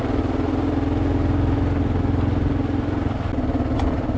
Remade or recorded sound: recorded